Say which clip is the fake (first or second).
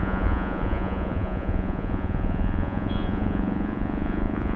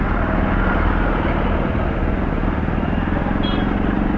first